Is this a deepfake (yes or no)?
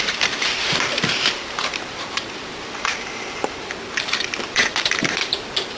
yes